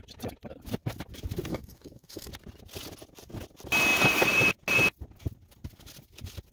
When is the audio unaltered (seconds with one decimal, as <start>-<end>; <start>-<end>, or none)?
0.0-1.5; 2.3-6.5

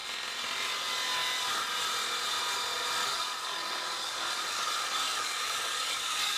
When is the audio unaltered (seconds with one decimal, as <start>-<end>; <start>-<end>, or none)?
0.0-3.0